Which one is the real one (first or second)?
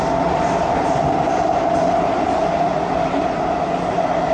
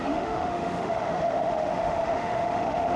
first